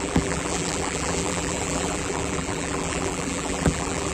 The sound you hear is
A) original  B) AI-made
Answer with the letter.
B